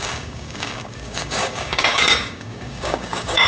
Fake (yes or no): yes